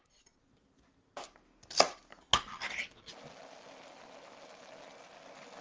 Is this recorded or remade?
recorded